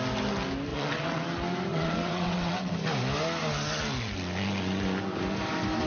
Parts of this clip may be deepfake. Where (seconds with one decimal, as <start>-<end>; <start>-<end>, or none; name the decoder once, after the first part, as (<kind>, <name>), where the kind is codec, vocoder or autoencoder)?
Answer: 0.7-1.2 (vocoder, WaveNeXt); 1.7-2.7